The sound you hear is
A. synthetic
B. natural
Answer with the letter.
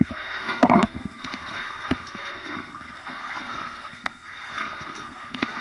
A